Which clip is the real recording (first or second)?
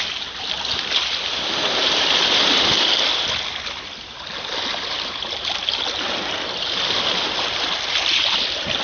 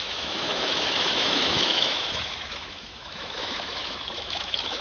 first